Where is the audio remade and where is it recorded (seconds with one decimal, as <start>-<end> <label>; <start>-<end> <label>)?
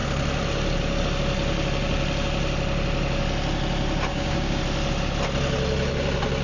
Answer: 0.0-4.1 recorded; 4.1-4.6 remade; 4.6-6.4 recorded